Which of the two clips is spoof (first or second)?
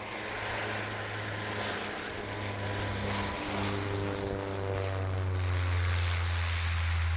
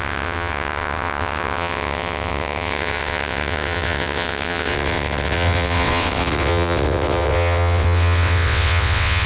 second